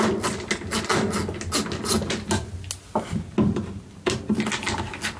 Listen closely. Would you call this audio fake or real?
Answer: real